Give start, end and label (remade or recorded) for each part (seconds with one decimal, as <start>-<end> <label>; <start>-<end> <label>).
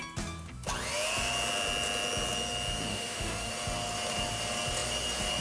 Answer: 0.0-2.9 recorded; 2.9-3.5 remade; 3.5-5.4 recorded